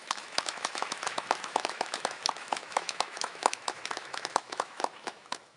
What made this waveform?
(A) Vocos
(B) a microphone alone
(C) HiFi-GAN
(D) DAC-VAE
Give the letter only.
D